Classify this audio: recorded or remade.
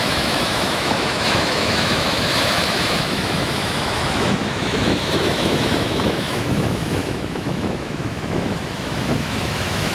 remade